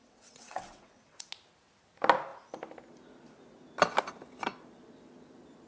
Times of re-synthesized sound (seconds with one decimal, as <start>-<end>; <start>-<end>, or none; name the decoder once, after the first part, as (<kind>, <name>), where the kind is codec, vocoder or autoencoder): 0.0-1.3 (vocoder, WaveNeXt)